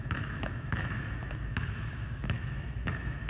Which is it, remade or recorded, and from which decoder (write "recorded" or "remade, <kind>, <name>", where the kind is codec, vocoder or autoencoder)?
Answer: remade, autoencoder, DAC-VAE